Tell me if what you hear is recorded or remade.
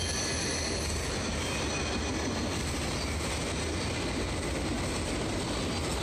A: recorded